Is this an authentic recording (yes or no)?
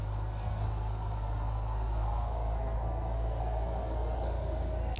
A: no